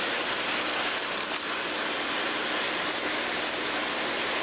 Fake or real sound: real